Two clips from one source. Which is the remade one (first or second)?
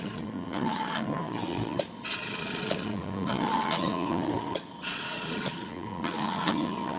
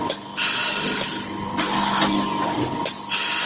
first